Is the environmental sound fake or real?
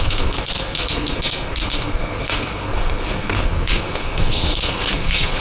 fake